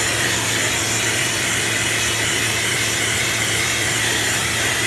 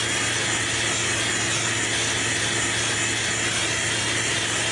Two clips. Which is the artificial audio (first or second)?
first